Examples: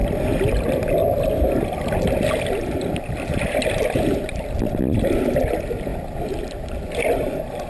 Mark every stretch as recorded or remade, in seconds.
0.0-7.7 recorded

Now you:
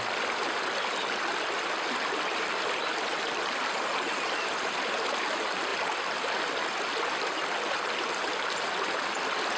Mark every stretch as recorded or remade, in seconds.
0.0-9.6 recorded

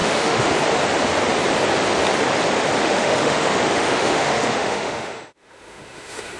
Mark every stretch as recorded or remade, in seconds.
0.0-0.5 remade; 0.5-2.8 recorded; 2.8-6.4 remade

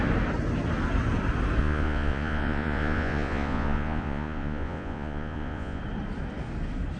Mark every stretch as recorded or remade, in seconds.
0.0-1.6 recorded; 1.6-5.8 remade; 5.8-7.0 recorded

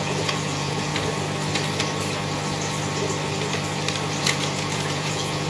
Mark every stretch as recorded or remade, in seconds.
0.0-0.9 remade; 0.9-4.2 recorded; 4.2-5.5 remade

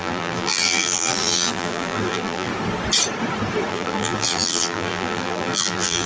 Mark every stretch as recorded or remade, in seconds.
0.0-2.5 remade; 2.5-3.7 recorded; 3.7-6.1 remade